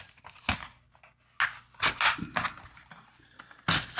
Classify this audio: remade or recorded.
recorded